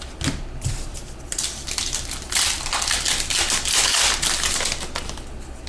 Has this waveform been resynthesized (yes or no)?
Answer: no